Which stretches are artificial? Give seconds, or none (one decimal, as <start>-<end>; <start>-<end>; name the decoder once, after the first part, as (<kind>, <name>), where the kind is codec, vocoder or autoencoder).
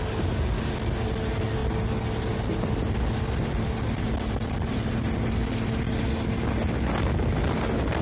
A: none